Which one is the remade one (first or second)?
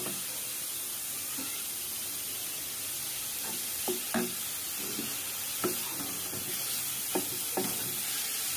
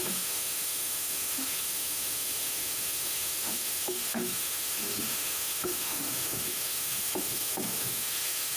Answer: second